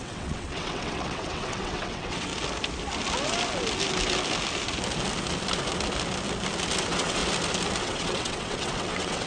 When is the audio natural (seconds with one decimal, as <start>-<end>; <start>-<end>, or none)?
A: 2.3-6.8; 7.2-7.8